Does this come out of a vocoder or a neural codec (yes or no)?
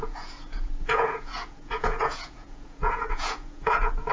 yes